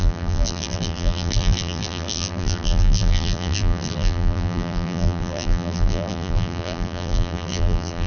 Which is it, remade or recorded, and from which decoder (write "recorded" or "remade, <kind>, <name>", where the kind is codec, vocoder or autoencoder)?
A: remade, vocoder, BigVGAN v2